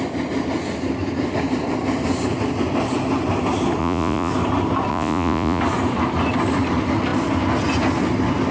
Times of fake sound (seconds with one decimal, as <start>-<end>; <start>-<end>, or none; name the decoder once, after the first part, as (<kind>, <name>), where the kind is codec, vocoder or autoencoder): 3.8-4.3 (vocoder, Vocos); 4.9-5.6

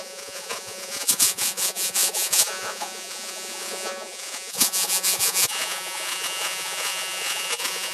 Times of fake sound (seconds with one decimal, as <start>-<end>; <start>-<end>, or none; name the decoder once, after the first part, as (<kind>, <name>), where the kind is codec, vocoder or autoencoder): 0.0-7.9 (vocoder, Vocos)